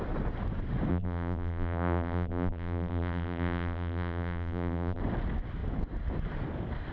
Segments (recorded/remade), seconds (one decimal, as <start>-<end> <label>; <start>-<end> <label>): 0.0-0.9 recorded; 0.9-5.0 remade; 5.0-6.9 recorded